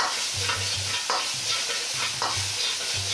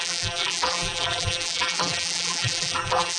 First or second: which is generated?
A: second